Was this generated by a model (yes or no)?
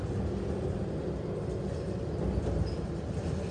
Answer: no